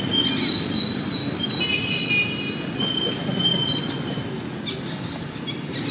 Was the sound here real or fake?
real